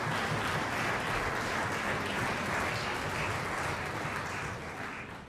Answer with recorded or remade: recorded